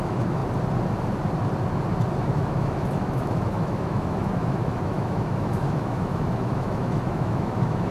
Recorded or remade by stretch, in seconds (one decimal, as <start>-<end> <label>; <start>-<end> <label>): 0.0-0.4 remade; 0.4-2.2 recorded; 2.2-7.9 remade